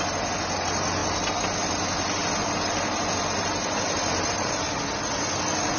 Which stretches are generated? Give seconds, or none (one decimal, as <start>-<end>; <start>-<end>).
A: none